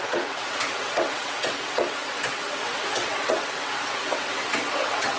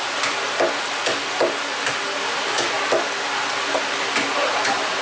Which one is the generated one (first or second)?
first